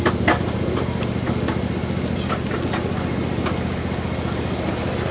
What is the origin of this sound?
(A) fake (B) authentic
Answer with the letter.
B